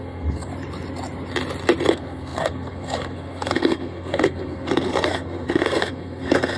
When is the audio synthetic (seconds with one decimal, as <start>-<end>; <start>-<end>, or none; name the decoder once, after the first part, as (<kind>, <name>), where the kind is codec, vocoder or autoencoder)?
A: 0.0-0.5 (codec, SNAC); 1.9-6.6